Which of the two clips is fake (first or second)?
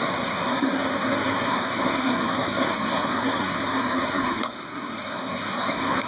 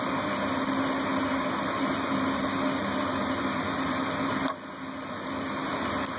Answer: first